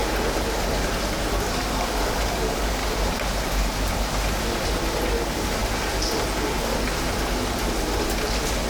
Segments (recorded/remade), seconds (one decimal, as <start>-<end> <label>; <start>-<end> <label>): 0.0-1.6 recorded; 1.6-2.8 remade; 2.8-5.1 recorded; 5.1-5.6 remade; 5.6-8.7 recorded